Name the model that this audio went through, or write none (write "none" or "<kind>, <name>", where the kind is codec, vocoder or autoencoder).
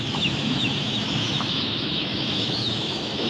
autoencoder, DAC-VAE